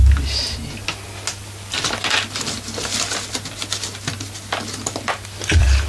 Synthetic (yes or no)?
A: no